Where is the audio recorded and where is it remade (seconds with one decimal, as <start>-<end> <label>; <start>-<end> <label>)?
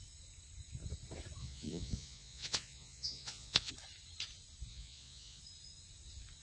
0.0-1.4 recorded; 1.4-3.7 remade; 3.7-4.7 recorded; 4.7-5.4 remade; 5.4-6.4 recorded